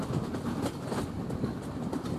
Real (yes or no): yes